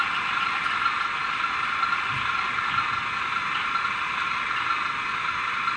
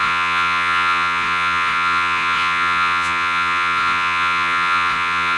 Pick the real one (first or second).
first